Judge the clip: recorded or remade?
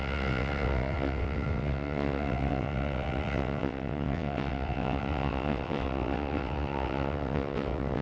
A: remade